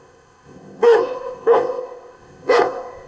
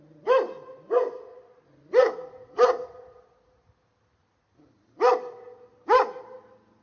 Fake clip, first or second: first